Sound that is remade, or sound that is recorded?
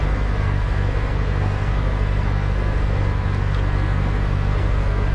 remade